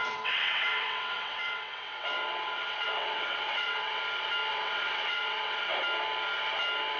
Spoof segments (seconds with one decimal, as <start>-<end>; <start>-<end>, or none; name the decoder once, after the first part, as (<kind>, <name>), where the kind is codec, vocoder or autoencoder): 0.0-4.0 (vocoder, WaveNeXt); 4.5-5.8

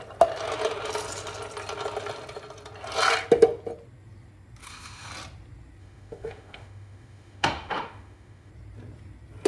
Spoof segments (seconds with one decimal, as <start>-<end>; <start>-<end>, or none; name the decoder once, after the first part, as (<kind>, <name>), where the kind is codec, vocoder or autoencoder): 4.6-5.1 (autoencoder, DAC-VAE); 5.8-8.5

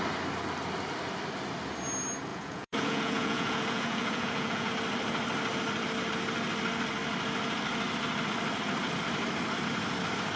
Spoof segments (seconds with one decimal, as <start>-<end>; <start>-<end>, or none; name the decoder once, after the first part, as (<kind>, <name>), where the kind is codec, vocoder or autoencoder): 2.3-4.7 (vocoder, Vocos)